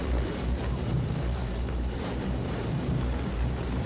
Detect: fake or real fake